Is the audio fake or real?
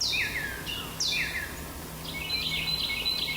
real